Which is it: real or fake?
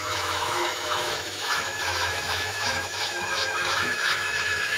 fake